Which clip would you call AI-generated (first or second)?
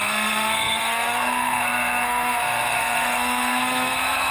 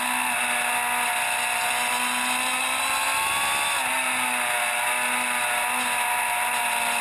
first